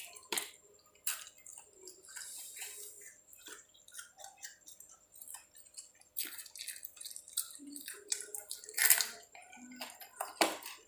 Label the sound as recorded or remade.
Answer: remade